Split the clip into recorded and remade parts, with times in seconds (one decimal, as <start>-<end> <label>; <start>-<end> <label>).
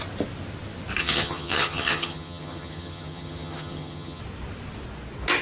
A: 0.0-1.0 recorded; 1.0-4.2 remade; 4.2-5.4 recorded